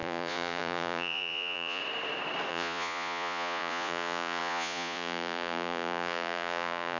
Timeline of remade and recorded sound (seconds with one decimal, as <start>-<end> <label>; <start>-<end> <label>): 0.0-1.8 remade; 1.8-2.5 recorded; 2.5-7.0 remade